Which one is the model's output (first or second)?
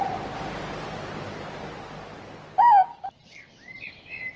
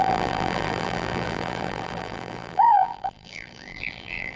second